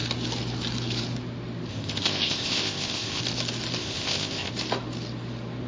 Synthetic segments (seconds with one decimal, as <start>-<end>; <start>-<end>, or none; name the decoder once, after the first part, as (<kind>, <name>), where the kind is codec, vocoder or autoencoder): 1.7-3.2 (codec, ZipCodec); 3.8-4.5